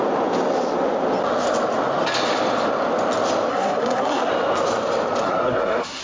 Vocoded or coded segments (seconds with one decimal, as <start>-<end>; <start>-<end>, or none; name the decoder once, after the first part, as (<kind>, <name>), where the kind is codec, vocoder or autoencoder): 3.5-4.3 (codec, SNAC); 5.2-6.0

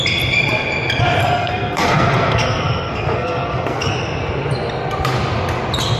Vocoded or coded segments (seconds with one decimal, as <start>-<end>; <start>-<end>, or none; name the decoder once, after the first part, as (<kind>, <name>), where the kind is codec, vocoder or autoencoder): 1.2-3.9 (codec, SNAC)

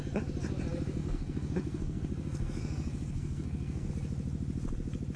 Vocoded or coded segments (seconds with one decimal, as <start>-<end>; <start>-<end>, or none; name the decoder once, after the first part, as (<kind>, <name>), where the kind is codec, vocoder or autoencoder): 1.0-3.9 (codec, SNAC)